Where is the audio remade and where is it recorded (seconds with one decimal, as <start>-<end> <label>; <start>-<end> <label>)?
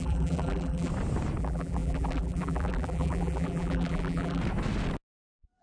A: 0.0-0.9 remade; 0.9-1.4 recorded; 1.4-4.4 remade; 4.4-5.6 recorded